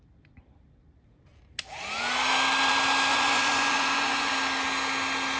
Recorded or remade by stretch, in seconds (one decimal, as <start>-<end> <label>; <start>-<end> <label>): 0.0-3.1 recorded; 3.1-4.3 remade; 4.3-5.4 recorded